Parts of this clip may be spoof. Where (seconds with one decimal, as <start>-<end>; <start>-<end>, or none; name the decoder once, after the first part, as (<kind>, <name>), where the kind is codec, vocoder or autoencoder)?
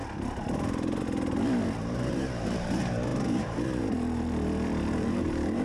1.8-5.6 (vocoder, BigVGAN v2)